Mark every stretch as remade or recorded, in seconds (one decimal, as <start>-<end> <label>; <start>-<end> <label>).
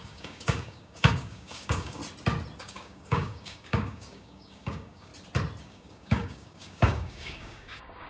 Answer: 0.0-2.0 remade; 2.0-2.6 recorded; 2.6-5.1 remade; 5.1-5.6 recorded; 5.6-8.1 remade